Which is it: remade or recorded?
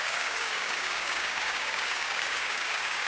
remade